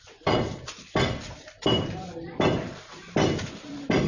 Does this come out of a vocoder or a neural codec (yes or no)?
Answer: yes